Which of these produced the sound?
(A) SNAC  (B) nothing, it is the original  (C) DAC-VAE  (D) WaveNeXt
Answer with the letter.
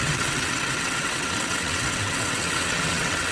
D